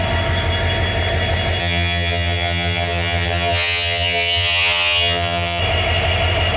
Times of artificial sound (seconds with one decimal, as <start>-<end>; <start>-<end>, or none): 1.6-5.6

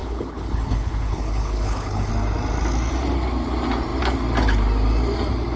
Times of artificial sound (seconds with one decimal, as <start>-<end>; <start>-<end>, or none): 0.0-2.1

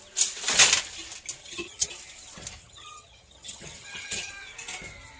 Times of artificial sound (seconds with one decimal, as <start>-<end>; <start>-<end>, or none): 1.4-1.9; 2.6-4.3

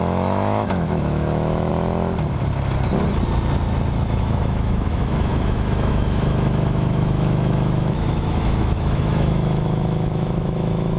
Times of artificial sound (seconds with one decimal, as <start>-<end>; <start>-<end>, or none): 0.0-1.7; 4.2-11.0

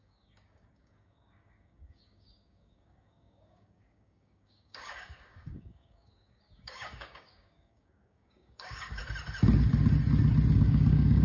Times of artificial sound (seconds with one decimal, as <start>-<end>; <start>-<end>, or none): 0.0-9.0; 10.5-11.2

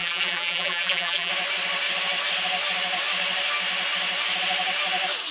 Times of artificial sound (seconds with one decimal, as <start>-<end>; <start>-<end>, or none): 0.0-1.3